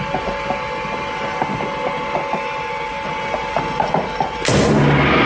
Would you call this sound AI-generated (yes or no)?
no